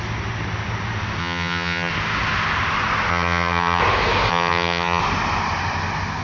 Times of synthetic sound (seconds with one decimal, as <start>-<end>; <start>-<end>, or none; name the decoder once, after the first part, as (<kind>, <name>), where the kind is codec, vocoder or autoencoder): 1.2-1.9 (vocoder, HiFi-GAN); 3.1-3.8; 4.3-5.0

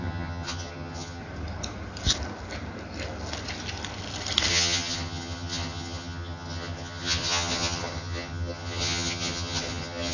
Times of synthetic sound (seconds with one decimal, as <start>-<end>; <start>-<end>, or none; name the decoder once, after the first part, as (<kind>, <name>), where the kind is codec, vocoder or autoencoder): 0.0-1.2 (vocoder, HiFi-GAN); 4.5-10.1

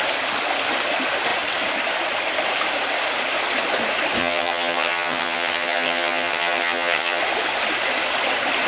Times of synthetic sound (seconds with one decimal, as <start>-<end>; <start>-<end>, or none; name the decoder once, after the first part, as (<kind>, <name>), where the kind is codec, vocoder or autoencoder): 4.2-7.2 (vocoder, HiFi-GAN)

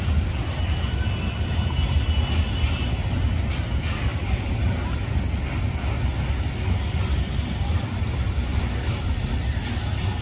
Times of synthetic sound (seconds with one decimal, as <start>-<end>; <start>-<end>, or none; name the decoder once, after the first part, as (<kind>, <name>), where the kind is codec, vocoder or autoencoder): none

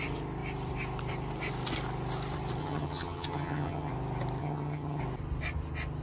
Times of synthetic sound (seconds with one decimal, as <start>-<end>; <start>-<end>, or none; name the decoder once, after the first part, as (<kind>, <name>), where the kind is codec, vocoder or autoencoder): 2.6-3.9 (vocoder, HiFi-GAN); 4.4-5.0

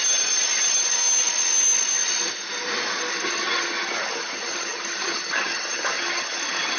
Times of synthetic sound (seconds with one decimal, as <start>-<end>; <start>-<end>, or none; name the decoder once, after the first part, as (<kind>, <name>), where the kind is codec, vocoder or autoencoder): 3.1-6.8 (vocoder, HiFi-GAN)

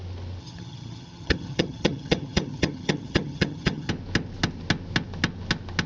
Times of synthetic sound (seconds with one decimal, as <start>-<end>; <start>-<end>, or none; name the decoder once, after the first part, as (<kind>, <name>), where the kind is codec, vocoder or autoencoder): 0.4-3.9 (vocoder, HiFi-GAN)

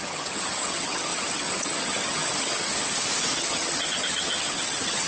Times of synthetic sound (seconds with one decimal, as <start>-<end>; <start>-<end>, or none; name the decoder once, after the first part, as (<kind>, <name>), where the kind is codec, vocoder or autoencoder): 0.0-2.7 (vocoder, HiFi-GAN); 3.4-5.1